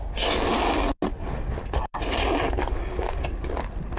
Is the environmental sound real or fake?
real